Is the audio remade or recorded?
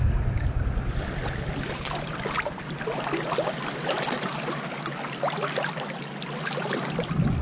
recorded